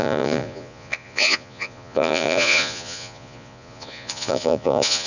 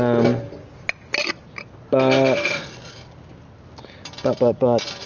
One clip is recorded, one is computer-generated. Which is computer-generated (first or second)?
first